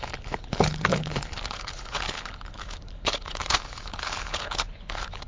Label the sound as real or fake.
fake